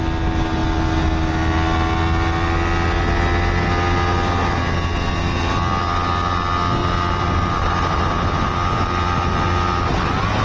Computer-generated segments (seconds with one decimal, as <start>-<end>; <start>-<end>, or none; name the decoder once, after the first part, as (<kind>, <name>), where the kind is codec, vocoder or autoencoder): none